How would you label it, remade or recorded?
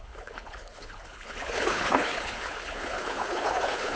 remade